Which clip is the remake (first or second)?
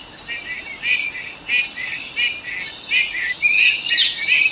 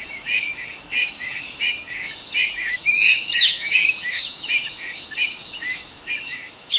second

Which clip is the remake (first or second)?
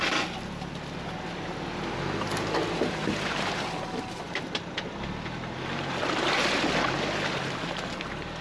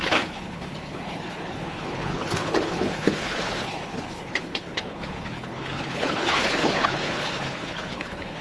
second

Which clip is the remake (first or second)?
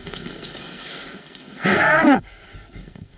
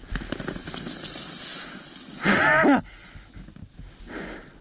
first